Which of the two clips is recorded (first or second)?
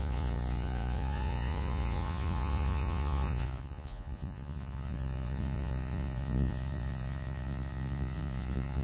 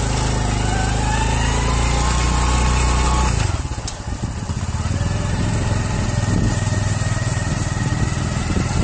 second